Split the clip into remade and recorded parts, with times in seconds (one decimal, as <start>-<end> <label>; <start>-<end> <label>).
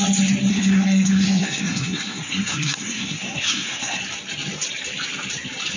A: 0.0-0.5 recorded; 0.5-4.0 remade; 4.0-5.8 recorded